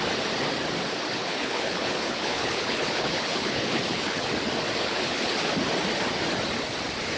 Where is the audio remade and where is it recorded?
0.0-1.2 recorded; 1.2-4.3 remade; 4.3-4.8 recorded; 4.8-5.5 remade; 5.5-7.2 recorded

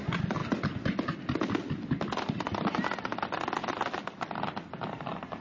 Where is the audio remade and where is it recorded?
0.0-5.4 recorded

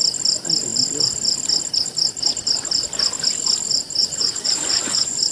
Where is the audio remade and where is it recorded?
0.0-4.0 recorded; 4.0-5.3 remade

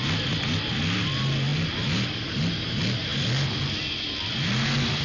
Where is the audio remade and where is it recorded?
0.0-5.0 recorded

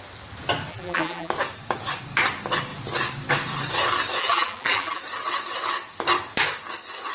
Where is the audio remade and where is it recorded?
0.0-0.7 recorded; 0.7-1.3 remade; 1.3-4.2 recorded; 4.2-5.0 remade; 5.0-7.1 recorded